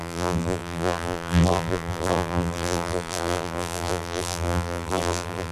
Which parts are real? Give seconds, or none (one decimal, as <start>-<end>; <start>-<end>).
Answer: none

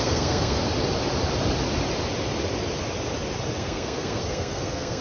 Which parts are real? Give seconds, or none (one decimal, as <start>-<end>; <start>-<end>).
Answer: 0.6-3.6

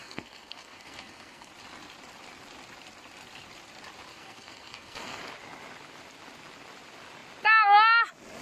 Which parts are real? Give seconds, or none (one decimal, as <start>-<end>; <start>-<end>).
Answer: 1.5-4.1; 5.2-8.4

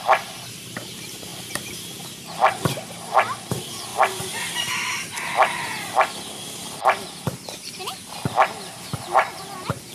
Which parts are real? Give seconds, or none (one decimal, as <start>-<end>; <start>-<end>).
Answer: 3.9-8.8

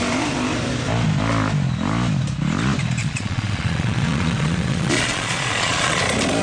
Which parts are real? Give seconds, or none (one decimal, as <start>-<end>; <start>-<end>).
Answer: 0.0-3.0; 6.0-6.4

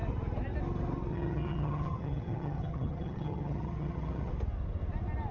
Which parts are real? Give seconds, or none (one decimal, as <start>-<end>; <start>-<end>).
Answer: 0.0-1.1; 4.3-5.3

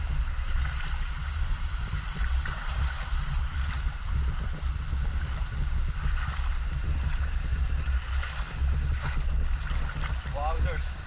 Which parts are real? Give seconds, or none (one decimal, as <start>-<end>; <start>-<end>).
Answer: 0.0-1.2; 3.1-11.1